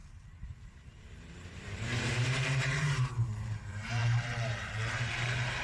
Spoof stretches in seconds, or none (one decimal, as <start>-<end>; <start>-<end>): 0.0-5.6